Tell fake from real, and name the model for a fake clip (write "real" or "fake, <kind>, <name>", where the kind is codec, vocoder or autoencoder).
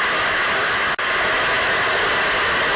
real